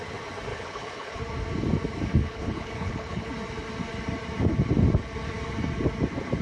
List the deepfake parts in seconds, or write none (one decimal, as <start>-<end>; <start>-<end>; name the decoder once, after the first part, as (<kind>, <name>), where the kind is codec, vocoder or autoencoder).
0.5-1.2 (codec, HILCodec); 2.1-3.3